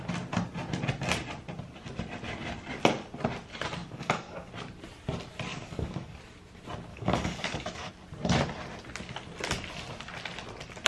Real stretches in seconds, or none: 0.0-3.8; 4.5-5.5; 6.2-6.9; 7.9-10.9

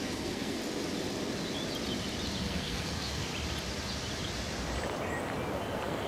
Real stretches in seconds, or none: 0.6-2.4; 3.3-5.5

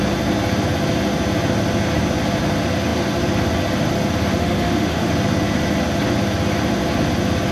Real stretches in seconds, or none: 0.0-4.4; 5.1-7.5

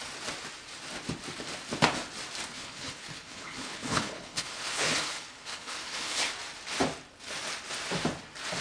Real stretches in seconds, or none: 0.0-2.5; 6.3-8.6

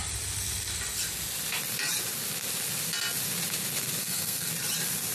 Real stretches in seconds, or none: 0.0-4.0; 4.5-5.1

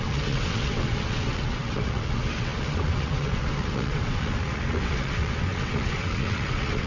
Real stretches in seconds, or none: none

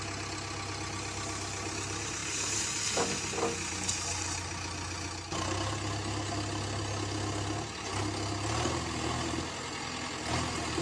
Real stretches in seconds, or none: 0.0-10.8